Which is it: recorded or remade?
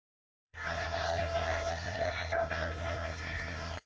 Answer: remade